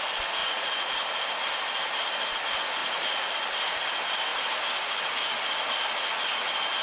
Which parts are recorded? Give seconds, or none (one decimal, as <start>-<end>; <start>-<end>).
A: 0.0-0.4; 1.0-2.8; 3.3-6.8